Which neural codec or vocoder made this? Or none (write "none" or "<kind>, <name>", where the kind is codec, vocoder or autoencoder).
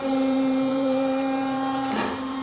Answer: vocoder, BigVGAN v2